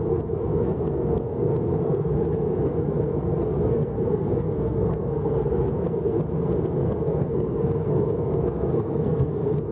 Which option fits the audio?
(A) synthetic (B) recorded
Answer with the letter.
A